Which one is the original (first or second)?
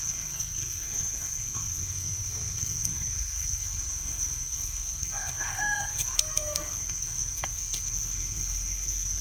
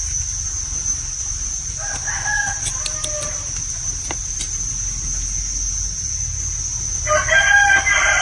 second